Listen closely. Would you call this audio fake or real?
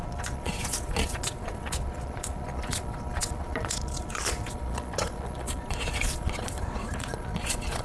fake